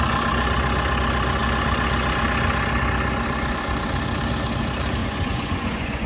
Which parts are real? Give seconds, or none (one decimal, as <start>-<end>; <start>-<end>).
0.0-5.0